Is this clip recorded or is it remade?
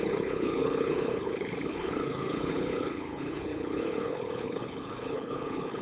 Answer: remade